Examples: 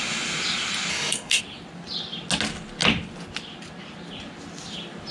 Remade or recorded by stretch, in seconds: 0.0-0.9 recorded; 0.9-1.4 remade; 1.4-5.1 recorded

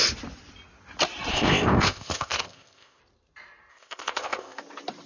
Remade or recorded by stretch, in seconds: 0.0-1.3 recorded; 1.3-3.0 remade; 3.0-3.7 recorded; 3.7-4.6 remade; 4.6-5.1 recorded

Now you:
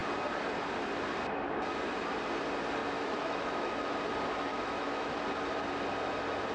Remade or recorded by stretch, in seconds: 0.0-2.8 recorded; 2.8-4.0 remade; 4.0-4.5 recorded; 4.5-5.2 remade; 5.2-6.5 recorded

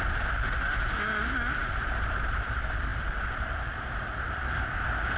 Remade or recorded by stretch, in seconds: 0.0-5.2 recorded